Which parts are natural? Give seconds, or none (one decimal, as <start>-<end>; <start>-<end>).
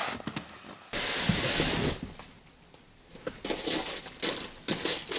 0.0-5.2